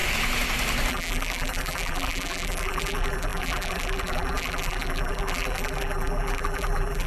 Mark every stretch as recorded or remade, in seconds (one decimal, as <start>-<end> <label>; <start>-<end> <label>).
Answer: 0.0-0.9 recorded; 0.9-7.1 remade